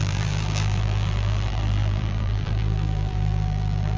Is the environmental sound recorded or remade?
remade